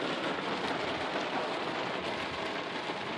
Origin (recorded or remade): recorded